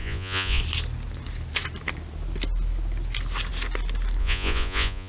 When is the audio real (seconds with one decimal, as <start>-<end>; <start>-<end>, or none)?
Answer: 0.6-4.2